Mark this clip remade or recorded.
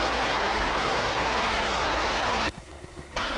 remade